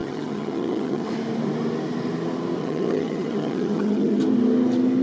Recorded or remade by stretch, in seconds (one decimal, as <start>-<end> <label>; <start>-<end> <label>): 0.0-1.1 remade; 1.1-2.6 recorded; 2.6-4.2 remade; 4.2-5.0 recorded